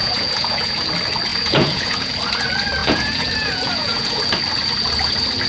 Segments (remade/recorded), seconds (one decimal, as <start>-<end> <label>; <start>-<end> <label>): 0.0-0.9 remade; 0.9-1.3 recorded; 1.3-2.1 remade; 2.1-2.8 recorded; 2.8-4.2 remade; 4.2-5.5 recorded